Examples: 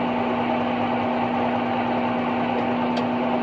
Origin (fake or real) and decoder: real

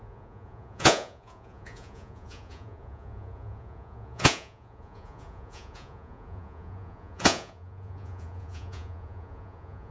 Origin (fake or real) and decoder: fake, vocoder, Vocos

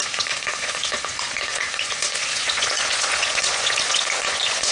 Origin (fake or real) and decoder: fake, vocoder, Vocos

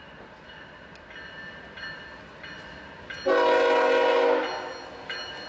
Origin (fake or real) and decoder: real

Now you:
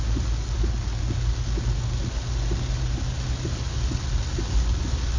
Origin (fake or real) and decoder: real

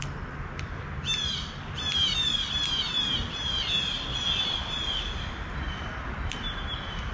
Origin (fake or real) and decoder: real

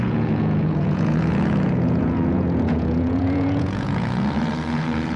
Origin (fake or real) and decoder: fake, vocoder, Vocos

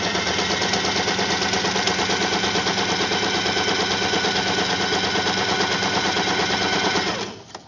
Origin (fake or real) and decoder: real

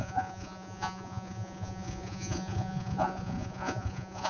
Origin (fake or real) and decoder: fake, vocoder, Vocos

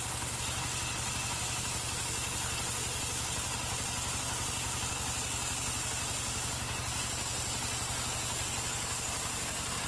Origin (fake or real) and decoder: real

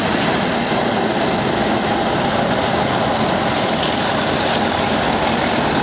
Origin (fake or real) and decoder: real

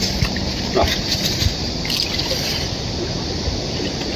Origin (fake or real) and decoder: real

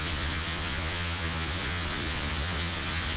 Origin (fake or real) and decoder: fake, vocoder, Vocos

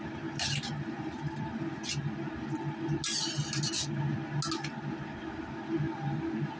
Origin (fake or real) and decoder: real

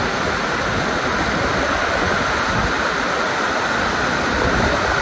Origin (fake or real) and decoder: real